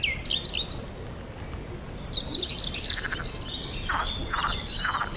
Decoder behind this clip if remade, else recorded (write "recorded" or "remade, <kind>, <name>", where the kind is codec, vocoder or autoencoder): recorded